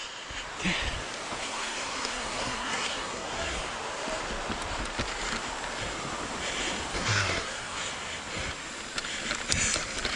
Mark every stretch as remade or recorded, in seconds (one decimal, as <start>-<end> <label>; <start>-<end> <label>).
0.0-1.4 recorded; 1.4-3.6 remade; 3.6-6.9 recorded; 6.9-7.9 remade; 7.9-10.2 recorded

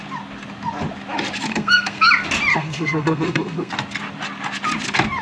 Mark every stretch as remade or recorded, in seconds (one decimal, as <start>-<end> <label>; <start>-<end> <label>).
0.0-1.5 recorded; 1.5-2.1 remade; 2.1-2.5 recorded; 2.5-3.7 remade; 3.7-5.2 recorded

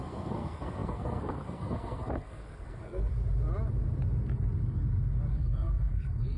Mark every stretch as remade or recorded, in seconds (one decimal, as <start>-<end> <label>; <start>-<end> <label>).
0.0-3.1 remade; 3.1-5.3 recorded; 5.3-6.4 remade

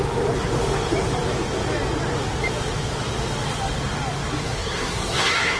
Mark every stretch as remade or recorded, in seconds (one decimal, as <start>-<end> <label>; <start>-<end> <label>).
0.0-4.4 recorded; 4.4-5.6 remade

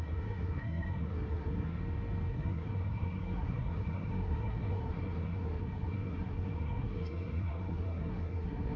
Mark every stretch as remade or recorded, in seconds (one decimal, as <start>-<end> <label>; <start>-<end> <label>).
0.0-1.8 remade; 1.8-2.3 recorded; 2.3-8.8 remade

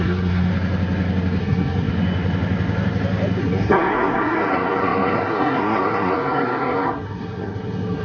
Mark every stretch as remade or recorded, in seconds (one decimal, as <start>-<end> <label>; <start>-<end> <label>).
0.0-0.5 remade; 0.5-1.4 recorded; 1.4-1.9 remade; 1.9-3.4 recorded; 3.4-8.0 remade